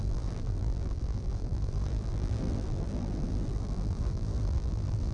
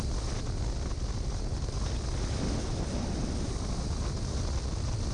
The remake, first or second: first